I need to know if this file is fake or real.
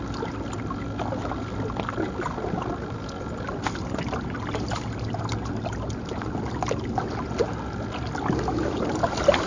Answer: real